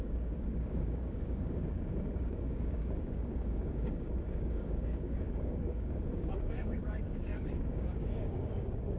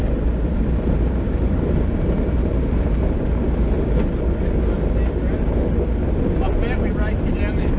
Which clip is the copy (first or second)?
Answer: first